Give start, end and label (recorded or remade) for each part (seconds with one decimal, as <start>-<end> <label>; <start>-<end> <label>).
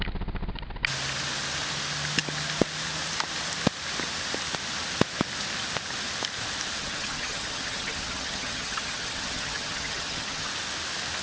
0.0-6.8 recorded; 6.8-10.5 remade; 10.5-11.2 recorded